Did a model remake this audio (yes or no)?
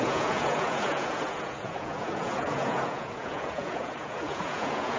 yes